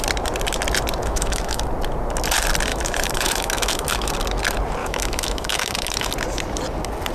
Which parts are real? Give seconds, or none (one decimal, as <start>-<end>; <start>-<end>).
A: 0.0-1.0; 1.6-2.7; 4.1-4.8; 6.1-7.1